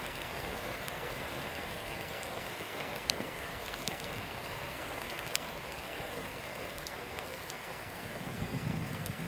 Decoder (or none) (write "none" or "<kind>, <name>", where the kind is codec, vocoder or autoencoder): codec, SNAC